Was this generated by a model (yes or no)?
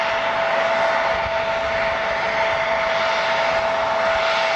no